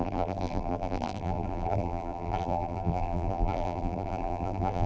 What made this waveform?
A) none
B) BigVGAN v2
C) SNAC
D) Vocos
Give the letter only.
B